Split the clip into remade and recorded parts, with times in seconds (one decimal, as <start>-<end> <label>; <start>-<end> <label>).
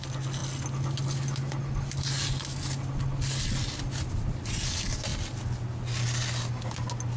0.0-7.2 recorded